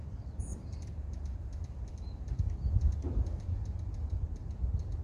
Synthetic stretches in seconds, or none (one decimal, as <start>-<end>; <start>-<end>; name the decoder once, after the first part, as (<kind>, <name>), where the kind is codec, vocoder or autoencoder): 0.5-3.5 (vocoder, BigVGAN v2)